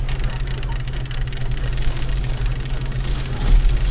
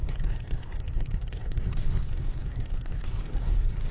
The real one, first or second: first